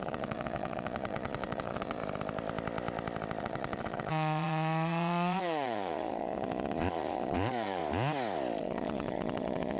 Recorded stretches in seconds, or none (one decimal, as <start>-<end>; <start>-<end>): 2.0-3.4; 7.8-8.6